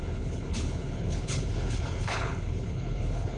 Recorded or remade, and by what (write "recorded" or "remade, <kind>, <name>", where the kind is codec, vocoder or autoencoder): remade, codec, HILCodec